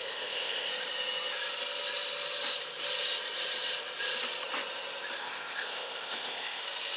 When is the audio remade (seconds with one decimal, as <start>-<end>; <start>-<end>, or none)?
0.0-0.7; 5.2-6.6